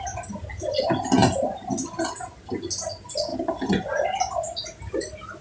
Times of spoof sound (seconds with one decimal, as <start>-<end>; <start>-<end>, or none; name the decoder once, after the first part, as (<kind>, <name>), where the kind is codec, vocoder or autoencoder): none